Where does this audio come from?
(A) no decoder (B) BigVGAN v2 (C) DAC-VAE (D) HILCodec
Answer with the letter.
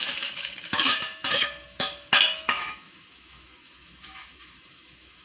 C